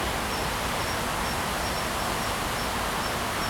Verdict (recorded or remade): recorded